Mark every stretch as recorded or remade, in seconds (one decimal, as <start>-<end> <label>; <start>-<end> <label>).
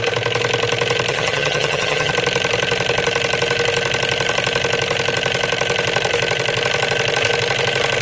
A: 0.0-1.1 recorded; 1.1-2.1 remade; 2.1-8.0 recorded